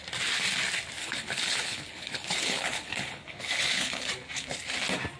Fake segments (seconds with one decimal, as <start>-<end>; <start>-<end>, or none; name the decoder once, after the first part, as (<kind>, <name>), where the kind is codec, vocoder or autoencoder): 1.0-4.1 (codec, HILCodec)